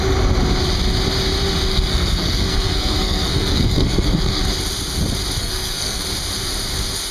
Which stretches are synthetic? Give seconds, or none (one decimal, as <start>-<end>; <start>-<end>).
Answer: 1.7-4.4; 5.4-6.0